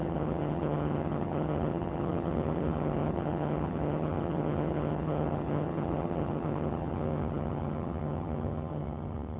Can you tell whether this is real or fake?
fake